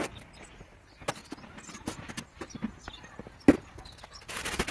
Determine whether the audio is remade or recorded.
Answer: recorded